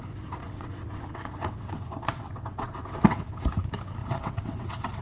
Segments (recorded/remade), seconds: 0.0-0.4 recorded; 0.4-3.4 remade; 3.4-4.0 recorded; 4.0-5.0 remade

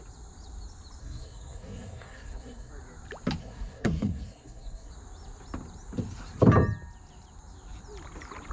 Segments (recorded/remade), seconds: 0.0-1.0 recorded; 1.0-2.7 remade; 2.7-3.4 recorded; 3.4-4.9 remade; 4.9-8.5 recorded

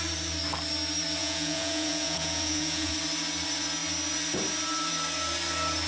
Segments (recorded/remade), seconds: 0.0-1.2 recorded; 1.2-2.9 remade; 2.9-5.9 recorded

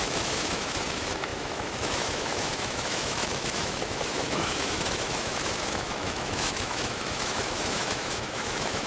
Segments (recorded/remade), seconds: 0.0-8.9 remade

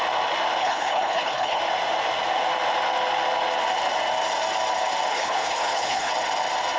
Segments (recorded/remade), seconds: 0.0-0.6 recorded; 0.6-1.6 remade; 1.6-5.1 recorded; 5.1-6.1 remade; 6.1-6.8 recorded